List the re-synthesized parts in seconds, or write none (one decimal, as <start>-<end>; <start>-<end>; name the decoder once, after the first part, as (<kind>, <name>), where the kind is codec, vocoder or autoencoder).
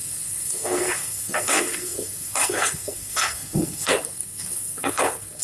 0.0-5.4 (codec, SNAC)